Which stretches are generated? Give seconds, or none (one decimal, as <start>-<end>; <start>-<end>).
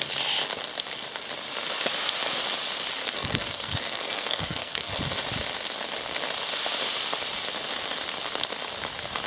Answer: 3.0-5.0